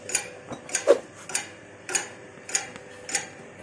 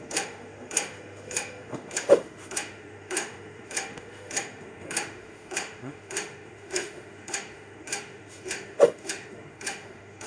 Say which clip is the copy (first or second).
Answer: second